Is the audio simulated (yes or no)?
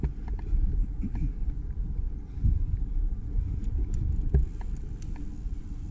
no